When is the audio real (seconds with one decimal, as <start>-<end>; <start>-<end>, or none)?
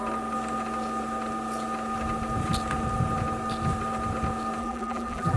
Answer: 0.0-4.6